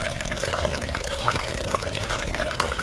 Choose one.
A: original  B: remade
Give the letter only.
B